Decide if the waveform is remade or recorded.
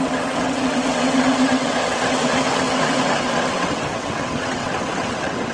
remade